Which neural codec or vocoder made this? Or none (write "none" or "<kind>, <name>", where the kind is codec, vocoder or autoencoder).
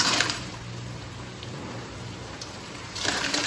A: vocoder, BigVGAN v2